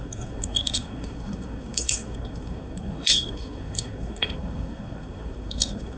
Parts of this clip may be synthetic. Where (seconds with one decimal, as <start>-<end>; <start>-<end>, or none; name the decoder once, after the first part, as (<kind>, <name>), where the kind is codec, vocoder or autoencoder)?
0.0-6.0 (codec, SNAC)